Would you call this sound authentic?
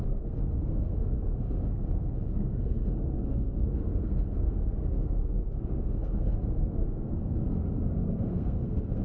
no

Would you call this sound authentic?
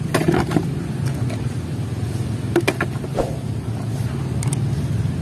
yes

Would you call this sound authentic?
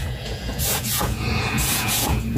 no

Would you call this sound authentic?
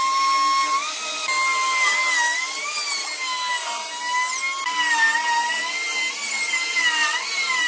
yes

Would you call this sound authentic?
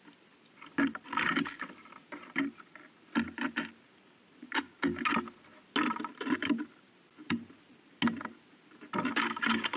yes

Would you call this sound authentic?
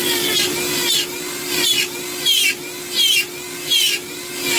yes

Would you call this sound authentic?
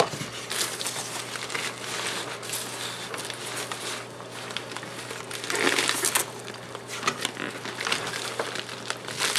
yes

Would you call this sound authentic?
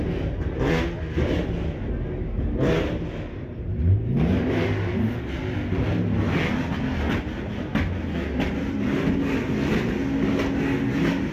yes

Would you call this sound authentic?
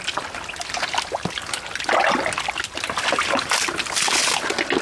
yes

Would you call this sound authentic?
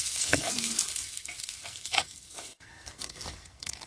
no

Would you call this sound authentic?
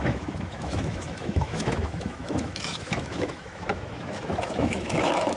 no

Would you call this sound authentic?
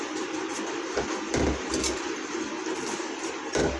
no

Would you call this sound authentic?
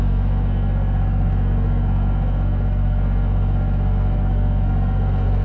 no